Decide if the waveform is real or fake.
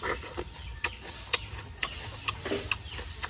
real